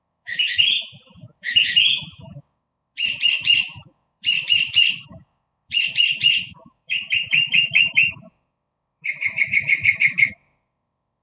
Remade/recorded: remade